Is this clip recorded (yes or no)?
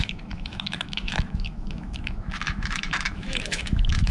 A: no